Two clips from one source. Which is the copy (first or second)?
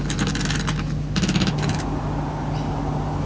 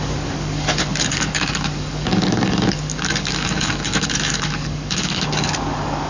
second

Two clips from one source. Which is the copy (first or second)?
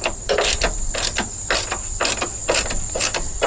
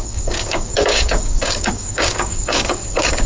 second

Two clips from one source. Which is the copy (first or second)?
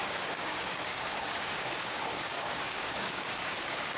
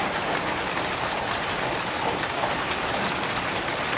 first